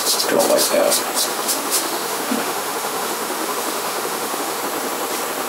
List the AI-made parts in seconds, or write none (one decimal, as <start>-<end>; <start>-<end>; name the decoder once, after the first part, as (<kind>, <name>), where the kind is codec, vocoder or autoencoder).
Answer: 1.3-4.6 (autoencoder, DAC-VAE)